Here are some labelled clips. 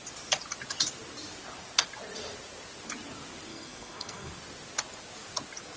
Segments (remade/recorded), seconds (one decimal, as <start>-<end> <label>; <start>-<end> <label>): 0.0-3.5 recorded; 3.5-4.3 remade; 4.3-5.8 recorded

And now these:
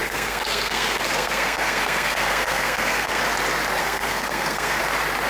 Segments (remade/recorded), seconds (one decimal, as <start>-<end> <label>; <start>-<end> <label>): 0.0-3.2 remade; 3.2-3.8 recorded; 3.8-4.8 remade; 4.8-5.3 recorded

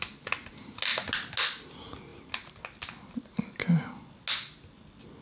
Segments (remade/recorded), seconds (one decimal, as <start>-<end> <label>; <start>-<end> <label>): 0.0-5.2 recorded